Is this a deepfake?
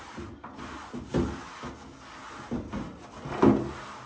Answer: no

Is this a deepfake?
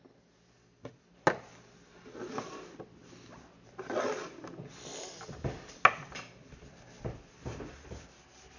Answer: no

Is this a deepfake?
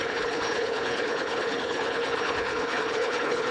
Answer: yes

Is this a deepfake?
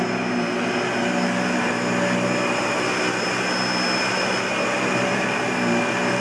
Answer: no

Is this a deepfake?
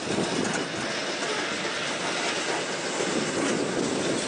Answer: no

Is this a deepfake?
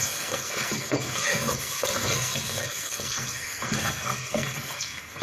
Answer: yes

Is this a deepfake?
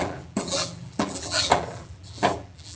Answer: yes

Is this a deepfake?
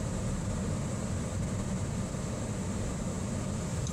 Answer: no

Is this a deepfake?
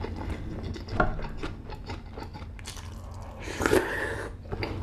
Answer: no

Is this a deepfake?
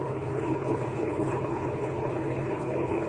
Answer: yes